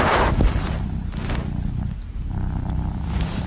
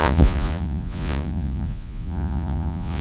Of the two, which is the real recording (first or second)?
first